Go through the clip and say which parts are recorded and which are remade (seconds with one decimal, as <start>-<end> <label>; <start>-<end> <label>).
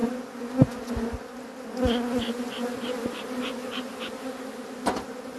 0.0-5.4 recorded